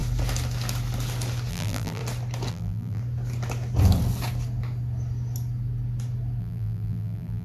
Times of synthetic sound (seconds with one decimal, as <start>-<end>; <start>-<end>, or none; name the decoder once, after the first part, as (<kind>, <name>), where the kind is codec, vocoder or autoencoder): 1.5-2.0 (vocoder, BigVGAN v2); 2.5-3.0; 6.4-7.4

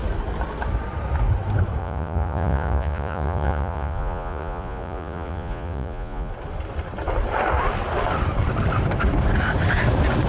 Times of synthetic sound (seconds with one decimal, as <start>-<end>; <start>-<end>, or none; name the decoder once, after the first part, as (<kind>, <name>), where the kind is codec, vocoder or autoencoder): 1.8-6.3 (vocoder, Vocos)

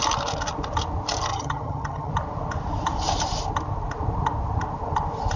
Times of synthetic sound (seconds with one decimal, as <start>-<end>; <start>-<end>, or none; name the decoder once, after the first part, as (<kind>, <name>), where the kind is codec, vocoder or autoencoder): 1.3-2.1 (vocoder, HiFi-GAN)

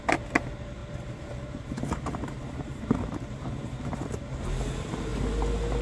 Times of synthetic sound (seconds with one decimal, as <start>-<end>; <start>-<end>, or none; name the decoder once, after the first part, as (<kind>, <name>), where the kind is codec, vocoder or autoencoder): 0.8-4.3 (vocoder, BigVGAN v2)

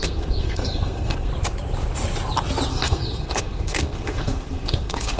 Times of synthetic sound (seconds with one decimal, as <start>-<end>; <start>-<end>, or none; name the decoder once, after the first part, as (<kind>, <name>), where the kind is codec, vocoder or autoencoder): 0.0-1.3 (codec, SNAC); 2.7-5.2

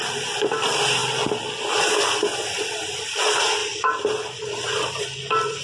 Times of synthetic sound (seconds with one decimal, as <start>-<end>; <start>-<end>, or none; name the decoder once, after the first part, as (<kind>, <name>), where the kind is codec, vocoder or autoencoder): 3.6-5.0 (vocoder, BigVGAN v2)

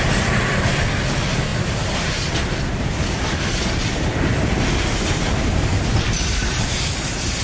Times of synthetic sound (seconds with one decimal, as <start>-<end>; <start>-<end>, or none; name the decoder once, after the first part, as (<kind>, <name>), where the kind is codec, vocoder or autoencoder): 1.5-2.4 (vocoder, BigVGAN v2); 5.7-7.0